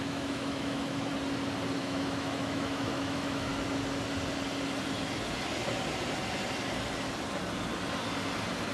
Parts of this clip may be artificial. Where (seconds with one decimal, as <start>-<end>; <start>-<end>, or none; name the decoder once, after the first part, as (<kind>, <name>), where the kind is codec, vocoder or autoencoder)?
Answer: 0.0-1.1 (autoencoder, DAC-VAE); 1.8-3.5